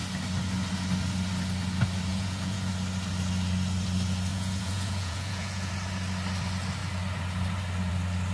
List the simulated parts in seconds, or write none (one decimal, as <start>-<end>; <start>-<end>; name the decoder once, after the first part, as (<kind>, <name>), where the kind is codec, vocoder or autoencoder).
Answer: 2.1-2.7 (vocoder, Vocos); 4.3-5.7